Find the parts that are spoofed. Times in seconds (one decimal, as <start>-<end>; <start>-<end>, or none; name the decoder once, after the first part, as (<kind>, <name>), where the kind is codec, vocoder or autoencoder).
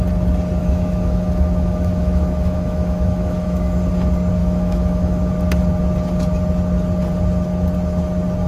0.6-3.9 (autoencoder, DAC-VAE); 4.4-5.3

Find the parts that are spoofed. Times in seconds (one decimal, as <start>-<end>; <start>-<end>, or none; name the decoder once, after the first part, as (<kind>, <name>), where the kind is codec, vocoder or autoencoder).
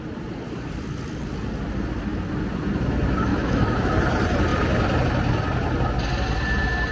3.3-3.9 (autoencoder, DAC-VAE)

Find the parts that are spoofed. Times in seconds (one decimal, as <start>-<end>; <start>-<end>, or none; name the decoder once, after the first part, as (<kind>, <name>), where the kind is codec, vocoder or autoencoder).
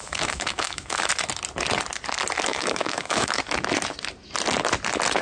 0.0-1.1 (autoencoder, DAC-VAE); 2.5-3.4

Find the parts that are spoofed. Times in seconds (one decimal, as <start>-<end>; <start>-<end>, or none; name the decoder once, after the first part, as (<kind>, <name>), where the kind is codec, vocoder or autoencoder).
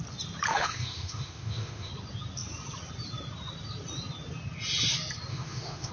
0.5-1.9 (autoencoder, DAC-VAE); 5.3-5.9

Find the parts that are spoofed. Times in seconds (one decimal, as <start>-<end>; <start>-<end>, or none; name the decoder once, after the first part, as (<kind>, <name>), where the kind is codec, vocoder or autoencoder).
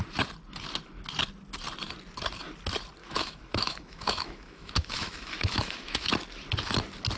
3.0-6.1 (autoencoder, DAC-VAE)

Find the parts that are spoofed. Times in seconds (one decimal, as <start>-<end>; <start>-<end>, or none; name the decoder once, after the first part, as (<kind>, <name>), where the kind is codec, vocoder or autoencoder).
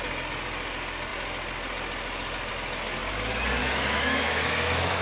3.6-5.0 (autoencoder, DAC-VAE)